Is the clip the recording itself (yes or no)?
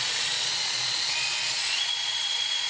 no